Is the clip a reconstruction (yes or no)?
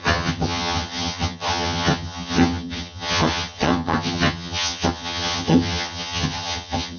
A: yes